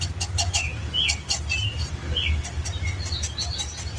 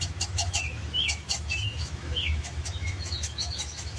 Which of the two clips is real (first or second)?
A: first